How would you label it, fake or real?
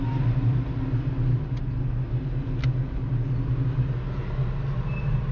real